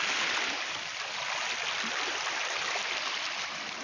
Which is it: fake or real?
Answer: real